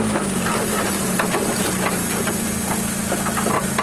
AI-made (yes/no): no